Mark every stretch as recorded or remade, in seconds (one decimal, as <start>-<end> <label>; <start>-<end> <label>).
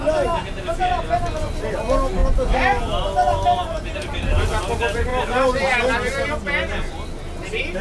0.0-7.8 recorded